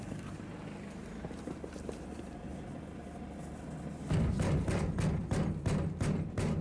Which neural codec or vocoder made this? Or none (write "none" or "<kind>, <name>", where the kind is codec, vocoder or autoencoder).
none